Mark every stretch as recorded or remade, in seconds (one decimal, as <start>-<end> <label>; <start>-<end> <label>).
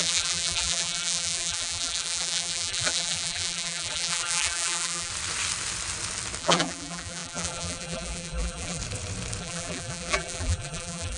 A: 0.0-5.1 remade; 5.1-6.4 recorded; 6.4-8.8 remade; 8.8-9.4 recorded; 9.4-11.2 remade